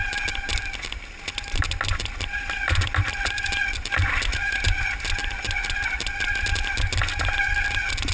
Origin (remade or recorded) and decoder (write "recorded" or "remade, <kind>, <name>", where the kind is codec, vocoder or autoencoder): recorded